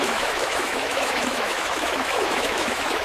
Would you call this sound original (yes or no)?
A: no